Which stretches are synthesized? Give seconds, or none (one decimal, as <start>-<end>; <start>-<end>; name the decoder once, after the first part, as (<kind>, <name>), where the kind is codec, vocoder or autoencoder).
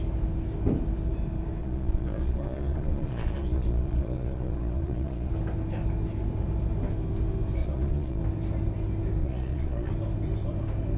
1.6-5.3 (vocoder, Vocos); 7.6-8.2; 9.2-9.9